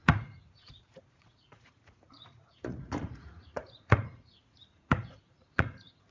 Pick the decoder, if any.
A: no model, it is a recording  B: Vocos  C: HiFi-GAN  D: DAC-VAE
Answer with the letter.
B